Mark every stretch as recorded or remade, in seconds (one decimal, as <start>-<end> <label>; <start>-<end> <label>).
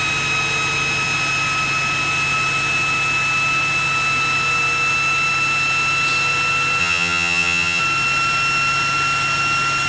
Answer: 0.0-6.8 recorded; 6.8-7.8 remade; 7.8-9.9 recorded